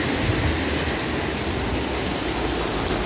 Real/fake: real